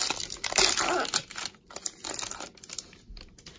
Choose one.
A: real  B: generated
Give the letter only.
A